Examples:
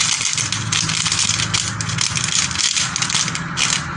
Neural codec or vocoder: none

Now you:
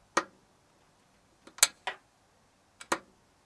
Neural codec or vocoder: none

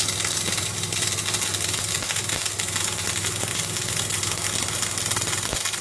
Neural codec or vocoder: none